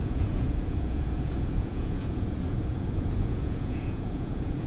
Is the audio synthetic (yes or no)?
yes